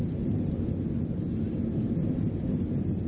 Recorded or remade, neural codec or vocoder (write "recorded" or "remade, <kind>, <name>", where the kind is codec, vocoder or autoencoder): recorded